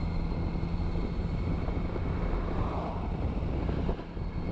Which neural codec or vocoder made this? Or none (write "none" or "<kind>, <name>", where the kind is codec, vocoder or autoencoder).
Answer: none